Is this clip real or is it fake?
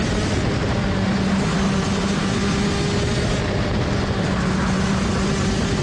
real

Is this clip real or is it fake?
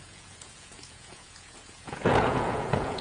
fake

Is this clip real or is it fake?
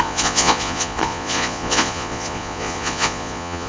fake